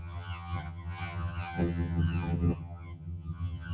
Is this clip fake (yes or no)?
yes